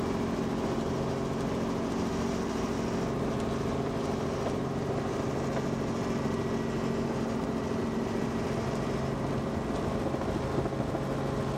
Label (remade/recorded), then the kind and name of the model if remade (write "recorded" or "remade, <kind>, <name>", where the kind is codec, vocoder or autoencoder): recorded